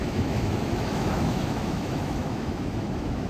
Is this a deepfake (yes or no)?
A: yes